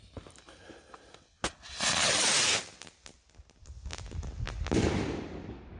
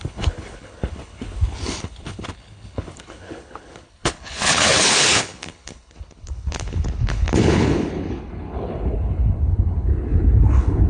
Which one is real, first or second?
first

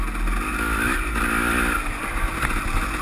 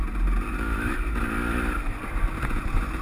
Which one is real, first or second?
first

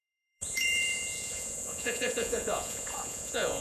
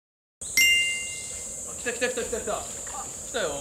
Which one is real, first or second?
second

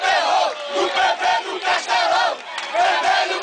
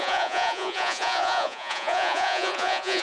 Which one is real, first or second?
first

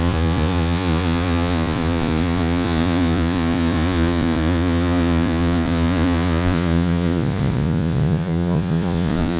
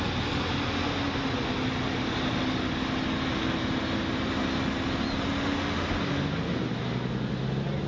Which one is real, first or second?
second